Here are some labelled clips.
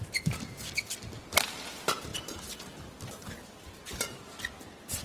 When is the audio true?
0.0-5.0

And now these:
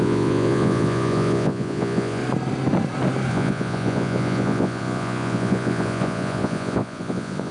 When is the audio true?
2.2-3.3

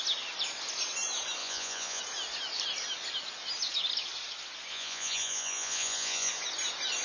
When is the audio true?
0.0-1.4; 2.0-4.7; 6.3-7.0

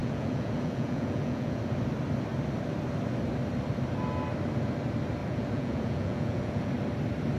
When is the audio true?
1.6-5.2; 6.7-7.4

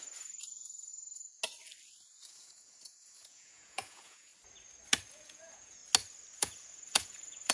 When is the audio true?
0.9-2.2; 4.3-5.1; 5.8-6.3

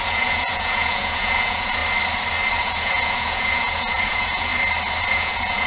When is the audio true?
1.8-2.6; 4.5-5.0

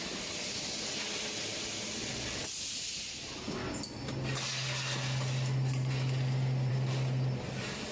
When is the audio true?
0.0-7.9

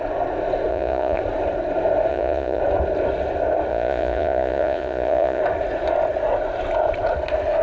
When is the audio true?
0.0-0.7; 1.2-2.1; 2.6-3.7; 5.4-7.6